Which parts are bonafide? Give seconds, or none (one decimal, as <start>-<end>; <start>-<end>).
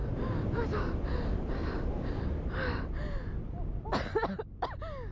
0.0-5.1